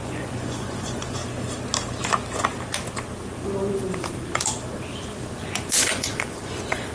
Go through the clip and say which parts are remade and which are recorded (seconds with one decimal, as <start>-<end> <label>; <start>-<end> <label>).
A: 0.0-1.2 remade; 1.2-5.3 recorded; 5.3-6.9 remade